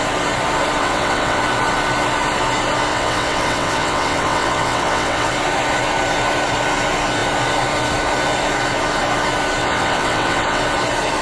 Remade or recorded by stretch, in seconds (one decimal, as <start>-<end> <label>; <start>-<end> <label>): 0.0-0.8 recorded; 0.8-1.4 remade; 1.4-2.9 recorded; 2.9-5.3 remade; 5.3-9.6 recorded; 9.6-10.6 remade; 10.6-11.2 recorded